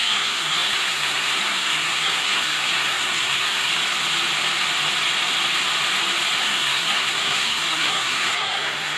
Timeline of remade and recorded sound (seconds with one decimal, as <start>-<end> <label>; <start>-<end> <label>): 0.0-3.7 remade; 3.7-6.4 recorded; 6.4-9.0 remade